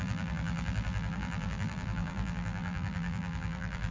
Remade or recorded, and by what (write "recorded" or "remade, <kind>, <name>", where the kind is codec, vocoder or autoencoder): remade, vocoder, BigVGAN v2